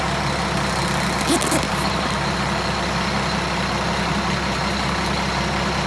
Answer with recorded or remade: recorded